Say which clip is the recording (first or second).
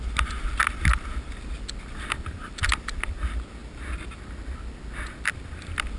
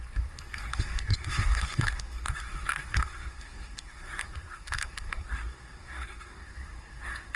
first